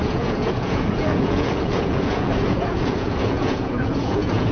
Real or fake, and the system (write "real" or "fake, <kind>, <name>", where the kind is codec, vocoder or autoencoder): fake, vocoder, Vocos